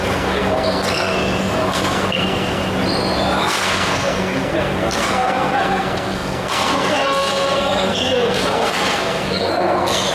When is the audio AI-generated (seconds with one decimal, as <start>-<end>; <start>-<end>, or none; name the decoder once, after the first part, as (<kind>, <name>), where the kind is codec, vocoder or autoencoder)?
0.0-2.6 (codec, SNAC); 3.4-10.1